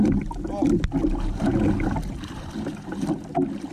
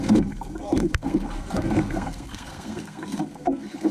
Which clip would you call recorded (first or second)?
first